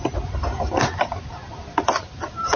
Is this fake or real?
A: real